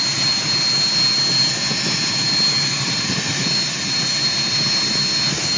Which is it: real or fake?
real